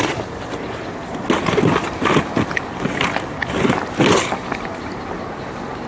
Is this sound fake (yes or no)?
no